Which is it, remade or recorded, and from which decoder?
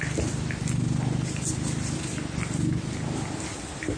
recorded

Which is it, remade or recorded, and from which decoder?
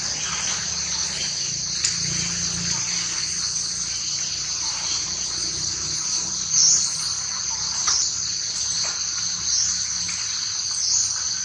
recorded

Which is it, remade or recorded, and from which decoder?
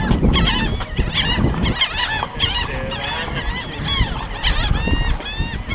recorded